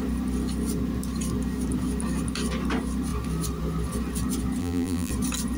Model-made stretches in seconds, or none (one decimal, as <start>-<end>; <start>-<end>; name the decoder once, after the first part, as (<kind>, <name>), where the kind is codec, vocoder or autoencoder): 4.6-5.1 (vocoder, BigVGAN v2)